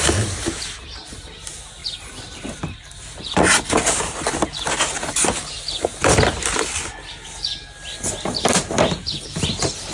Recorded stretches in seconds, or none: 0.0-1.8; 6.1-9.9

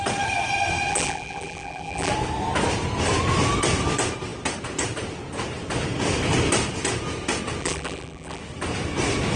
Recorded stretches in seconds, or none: 0.0-0.9; 2.1-7.6; 8.4-9.4

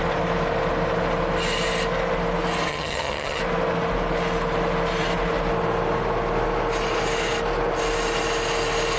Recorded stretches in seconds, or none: 0.0-2.7; 3.4-9.0